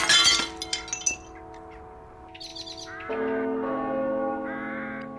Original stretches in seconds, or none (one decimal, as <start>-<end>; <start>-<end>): 0.0-5.2